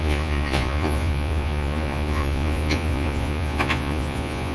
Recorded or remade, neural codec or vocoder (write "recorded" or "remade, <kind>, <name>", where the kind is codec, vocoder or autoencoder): remade, vocoder, Vocos